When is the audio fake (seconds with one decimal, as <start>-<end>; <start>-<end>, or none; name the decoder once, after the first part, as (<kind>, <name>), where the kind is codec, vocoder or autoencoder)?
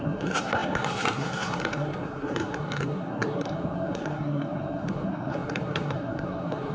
0.0-6.7 (codec, SNAC)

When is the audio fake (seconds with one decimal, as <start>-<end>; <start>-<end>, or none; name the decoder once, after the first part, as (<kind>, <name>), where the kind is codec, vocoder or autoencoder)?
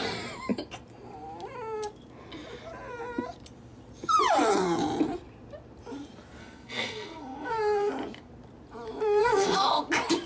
6.4-7.9 (codec, SNAC); 9.2-9.8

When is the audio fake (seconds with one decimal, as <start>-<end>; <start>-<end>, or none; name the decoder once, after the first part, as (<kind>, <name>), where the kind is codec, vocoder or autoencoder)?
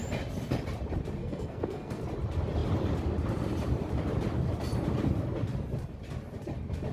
1.2-2.0 (codec, SNAC)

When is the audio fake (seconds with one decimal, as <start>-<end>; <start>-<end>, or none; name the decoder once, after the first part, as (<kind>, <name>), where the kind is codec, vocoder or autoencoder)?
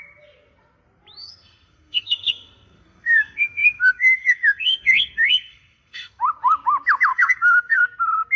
1.2-6.2 (codec, SNAC); 7.1-7.8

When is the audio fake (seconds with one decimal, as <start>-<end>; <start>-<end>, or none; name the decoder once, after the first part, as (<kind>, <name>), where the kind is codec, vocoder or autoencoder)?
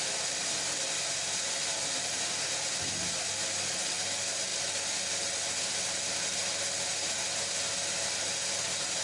none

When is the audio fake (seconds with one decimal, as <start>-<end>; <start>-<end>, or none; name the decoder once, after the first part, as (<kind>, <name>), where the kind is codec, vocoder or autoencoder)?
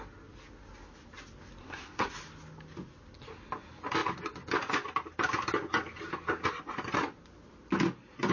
1.6-2.1 (codec, SNAC)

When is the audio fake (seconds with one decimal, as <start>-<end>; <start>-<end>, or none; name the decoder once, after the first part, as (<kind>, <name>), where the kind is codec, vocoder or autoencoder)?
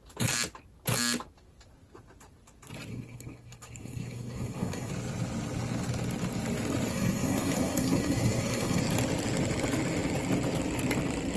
2.9-4.9 (codec, SNAC); 6.9-8.8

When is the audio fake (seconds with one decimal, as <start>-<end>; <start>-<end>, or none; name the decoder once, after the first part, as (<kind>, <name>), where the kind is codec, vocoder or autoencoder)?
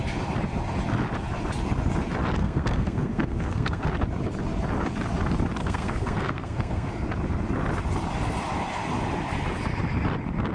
2.4-3.9 (codec, SNAC); 5.6-6.9